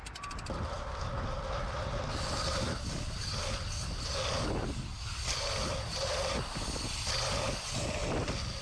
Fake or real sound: real